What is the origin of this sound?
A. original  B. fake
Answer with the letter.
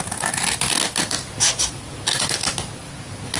A